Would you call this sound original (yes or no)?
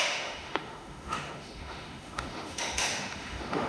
no